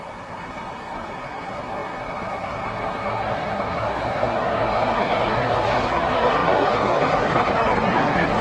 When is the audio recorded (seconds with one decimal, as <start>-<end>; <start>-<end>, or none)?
none